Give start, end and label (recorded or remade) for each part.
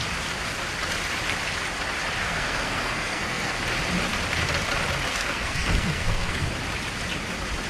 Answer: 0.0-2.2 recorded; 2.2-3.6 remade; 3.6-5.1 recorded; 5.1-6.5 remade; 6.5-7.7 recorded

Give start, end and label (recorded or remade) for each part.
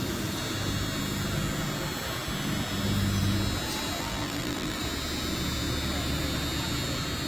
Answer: 0.0-4.0 recorded; 4.0-4.8 remade; 4.8-7.3 recorded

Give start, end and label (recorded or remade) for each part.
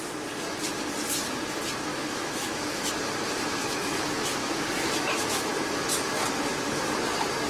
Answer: 0.0-1.9 recorded; 1.9-2.9 remade; 2.9-3.6 recorded; 3.6-5.5 remade; 5.5-7.5 recorded